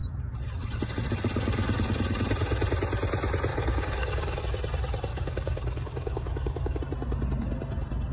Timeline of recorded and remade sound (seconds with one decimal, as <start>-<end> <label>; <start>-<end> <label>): 0.0-3.5 recorded; 3.5-4.4 remade; 4.4-5.1 recorded; 5.1-6.8 remade; 6.8-8.1 recorded